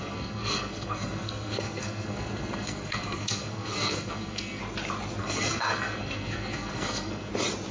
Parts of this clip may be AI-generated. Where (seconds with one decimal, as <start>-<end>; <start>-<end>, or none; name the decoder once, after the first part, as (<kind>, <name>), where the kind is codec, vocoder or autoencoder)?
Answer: 0.0-4.6 (codec, SNAC); 5.2-7.3